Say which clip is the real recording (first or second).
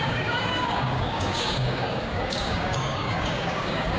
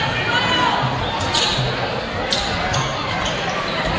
second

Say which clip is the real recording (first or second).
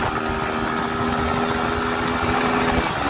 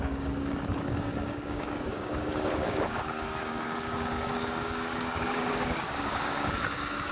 first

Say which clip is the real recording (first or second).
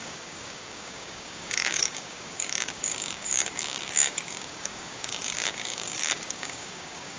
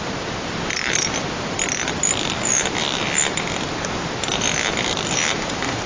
second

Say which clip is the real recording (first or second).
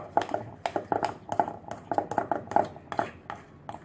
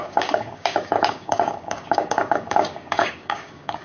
first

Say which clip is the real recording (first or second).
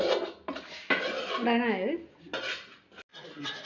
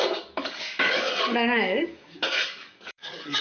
first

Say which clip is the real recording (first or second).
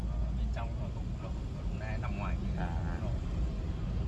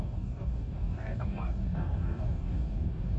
first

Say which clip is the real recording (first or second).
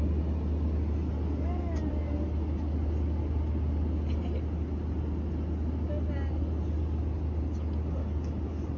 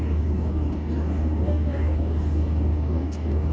first